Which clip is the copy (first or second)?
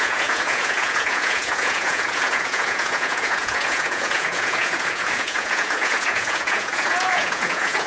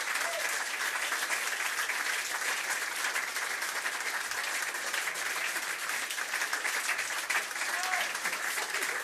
first